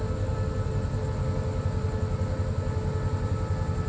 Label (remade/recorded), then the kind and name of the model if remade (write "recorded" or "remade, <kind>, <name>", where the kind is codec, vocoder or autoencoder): recorded